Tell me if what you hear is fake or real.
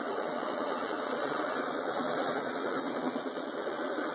fake